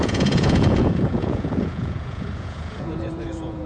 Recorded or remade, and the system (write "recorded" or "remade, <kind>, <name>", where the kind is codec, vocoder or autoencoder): remade, vocoder, Vocos